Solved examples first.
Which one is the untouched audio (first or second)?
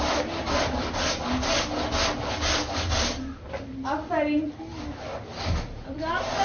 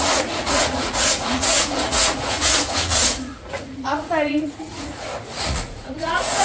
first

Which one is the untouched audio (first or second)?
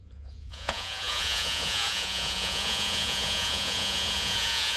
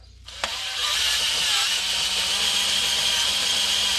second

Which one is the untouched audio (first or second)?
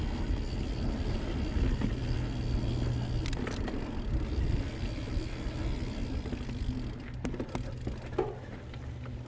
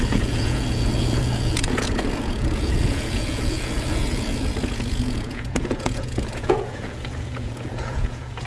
first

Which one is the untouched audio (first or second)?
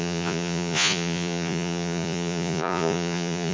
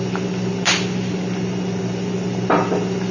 second